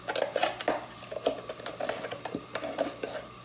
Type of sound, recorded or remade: recorded